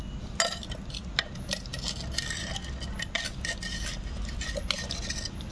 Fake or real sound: real